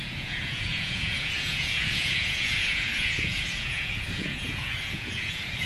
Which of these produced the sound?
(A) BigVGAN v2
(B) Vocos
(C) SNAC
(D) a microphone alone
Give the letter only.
B